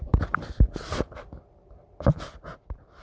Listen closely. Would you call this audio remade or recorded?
remade